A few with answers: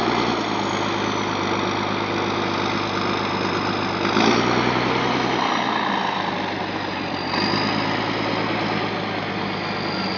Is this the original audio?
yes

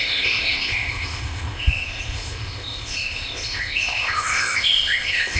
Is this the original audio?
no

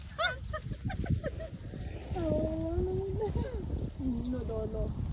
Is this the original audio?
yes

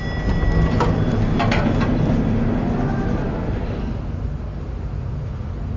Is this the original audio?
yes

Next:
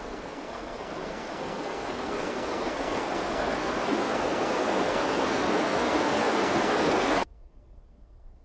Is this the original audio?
no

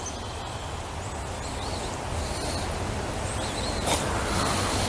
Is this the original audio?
yes